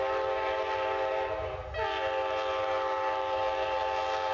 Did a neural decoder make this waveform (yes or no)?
no